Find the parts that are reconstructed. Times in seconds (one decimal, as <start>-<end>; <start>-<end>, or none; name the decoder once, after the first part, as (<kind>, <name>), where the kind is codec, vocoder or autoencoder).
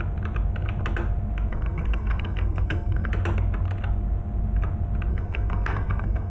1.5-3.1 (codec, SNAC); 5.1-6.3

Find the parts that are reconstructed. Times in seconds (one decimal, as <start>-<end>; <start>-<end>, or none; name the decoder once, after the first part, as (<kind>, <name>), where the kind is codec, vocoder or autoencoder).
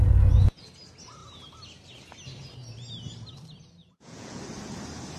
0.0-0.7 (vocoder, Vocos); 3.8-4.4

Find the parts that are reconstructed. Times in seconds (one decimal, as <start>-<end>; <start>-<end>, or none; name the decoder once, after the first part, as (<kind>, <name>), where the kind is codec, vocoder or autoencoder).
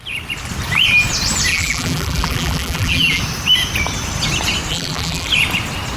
1.5-3.2 (vocoder, BigVGAN v2); 4.7-5.3